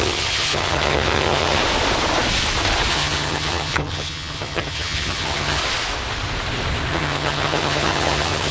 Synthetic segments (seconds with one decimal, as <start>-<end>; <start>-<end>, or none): 0.0-1.6; 2.9-5.6; 6.9-8.5